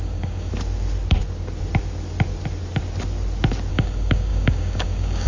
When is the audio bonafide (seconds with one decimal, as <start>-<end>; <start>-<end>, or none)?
0.5-3.7